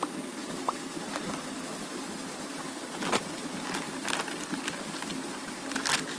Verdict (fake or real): real